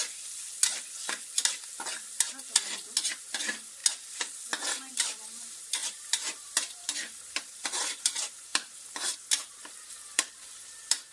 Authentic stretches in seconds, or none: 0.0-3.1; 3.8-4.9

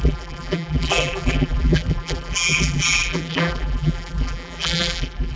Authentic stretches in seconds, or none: none

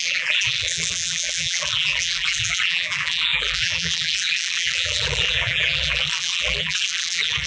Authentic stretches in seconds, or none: none

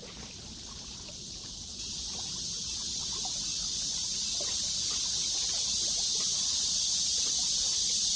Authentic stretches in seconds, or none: 3.0-8.2

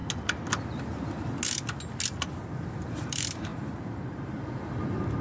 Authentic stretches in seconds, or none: 0.0-2.5

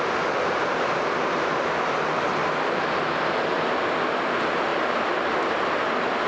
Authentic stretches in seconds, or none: 0.0-4.7